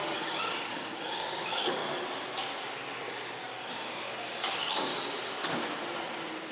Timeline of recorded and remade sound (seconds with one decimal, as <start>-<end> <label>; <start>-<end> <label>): 0.0-0.7 recorded; 0.7-1.8 remade; 1.8-3.7 recorded; 3.7-4.9 remade; 4.9-6.5 recorded